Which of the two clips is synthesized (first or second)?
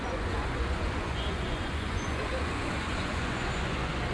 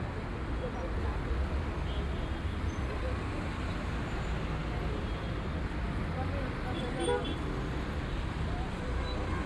first